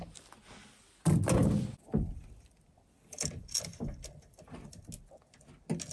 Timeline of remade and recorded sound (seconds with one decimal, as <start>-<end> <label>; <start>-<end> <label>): 0.0-1.4 recorded; 1.4-4.9 remade; 4.9-5.9 recorded